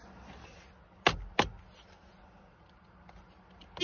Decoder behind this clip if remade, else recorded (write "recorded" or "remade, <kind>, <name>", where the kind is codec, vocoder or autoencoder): recorded